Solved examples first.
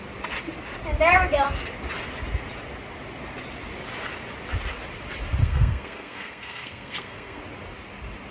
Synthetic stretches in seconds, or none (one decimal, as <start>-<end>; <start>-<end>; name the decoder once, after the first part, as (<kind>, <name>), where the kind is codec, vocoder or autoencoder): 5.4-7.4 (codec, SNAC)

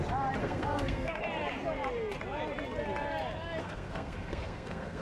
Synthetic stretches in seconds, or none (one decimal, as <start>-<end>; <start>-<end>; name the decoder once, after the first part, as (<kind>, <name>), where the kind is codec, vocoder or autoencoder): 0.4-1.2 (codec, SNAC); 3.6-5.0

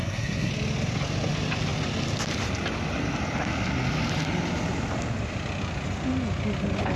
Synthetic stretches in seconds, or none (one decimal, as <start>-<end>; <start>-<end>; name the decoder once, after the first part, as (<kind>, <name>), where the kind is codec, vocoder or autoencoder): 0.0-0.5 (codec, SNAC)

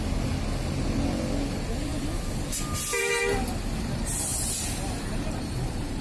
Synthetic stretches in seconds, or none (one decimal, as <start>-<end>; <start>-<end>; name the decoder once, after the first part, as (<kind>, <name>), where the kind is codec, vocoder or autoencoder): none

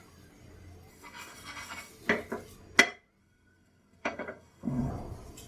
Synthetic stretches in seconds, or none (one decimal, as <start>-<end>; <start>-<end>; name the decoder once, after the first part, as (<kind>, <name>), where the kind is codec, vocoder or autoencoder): 0.9-1.9 (codec, SNAC); 3.2-4.9

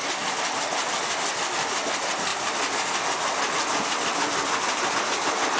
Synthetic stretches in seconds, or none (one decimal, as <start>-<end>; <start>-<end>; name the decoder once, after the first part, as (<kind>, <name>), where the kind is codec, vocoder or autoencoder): none

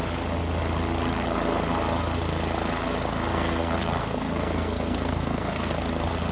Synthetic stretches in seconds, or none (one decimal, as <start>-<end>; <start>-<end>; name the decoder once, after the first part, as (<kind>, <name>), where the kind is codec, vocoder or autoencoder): 3.3-5.7 (codec, SNAC)

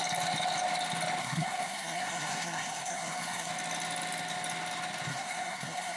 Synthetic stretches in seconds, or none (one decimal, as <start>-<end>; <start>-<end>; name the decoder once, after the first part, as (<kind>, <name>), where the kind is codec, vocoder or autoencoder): 1.2-3.5 (codec, SNAC); 5.1-6.0